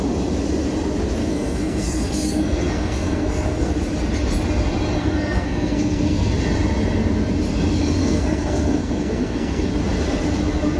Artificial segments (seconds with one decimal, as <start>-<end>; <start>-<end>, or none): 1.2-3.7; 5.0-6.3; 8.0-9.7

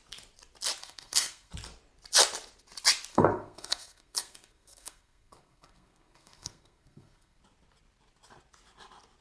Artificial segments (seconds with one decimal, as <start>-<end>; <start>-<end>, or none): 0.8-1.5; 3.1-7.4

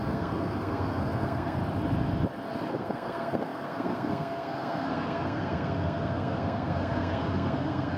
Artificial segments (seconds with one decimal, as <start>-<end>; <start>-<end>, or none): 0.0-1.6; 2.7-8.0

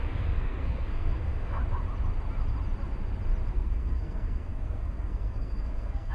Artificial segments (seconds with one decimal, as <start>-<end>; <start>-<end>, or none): 0.0-1.6; 3.5-6.1

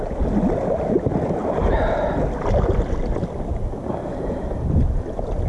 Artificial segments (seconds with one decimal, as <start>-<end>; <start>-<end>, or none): none

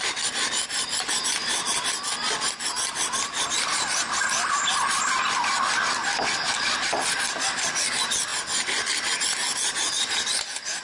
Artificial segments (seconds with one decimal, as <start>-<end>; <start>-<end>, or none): none

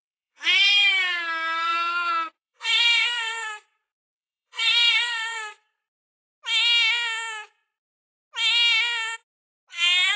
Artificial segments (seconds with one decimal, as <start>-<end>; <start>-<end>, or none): 0.0-5.8; 9.7-10.2